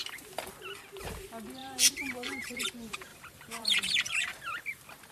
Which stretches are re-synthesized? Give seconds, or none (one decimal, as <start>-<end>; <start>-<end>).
1.6-2.7; 3.1-4.6